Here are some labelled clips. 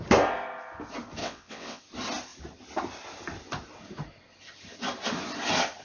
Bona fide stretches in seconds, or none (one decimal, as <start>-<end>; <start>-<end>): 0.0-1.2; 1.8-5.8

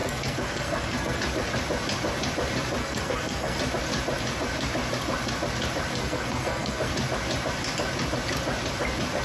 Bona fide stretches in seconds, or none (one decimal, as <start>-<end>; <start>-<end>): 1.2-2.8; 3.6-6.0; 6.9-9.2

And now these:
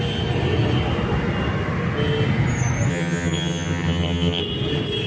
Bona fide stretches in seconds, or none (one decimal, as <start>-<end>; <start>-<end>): 0.0-2.9; 4.4-5.1

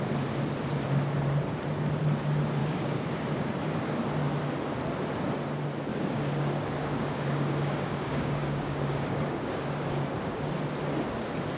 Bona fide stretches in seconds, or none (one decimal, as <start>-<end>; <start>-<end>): 0.0-2.6; 3.5-5.9; 10.4-11.6

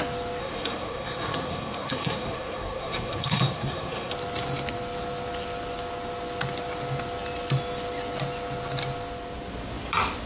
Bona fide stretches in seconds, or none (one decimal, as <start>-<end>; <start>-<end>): 0.0-0.4; 4.1-10.3

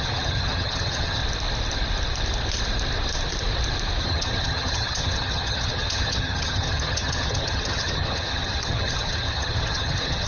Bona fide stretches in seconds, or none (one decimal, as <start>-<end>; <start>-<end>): 1.2-4.0

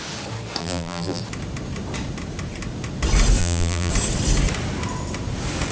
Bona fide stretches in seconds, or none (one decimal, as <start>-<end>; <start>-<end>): 0.0-0.6; 1.2-3.4; 3.9-5.7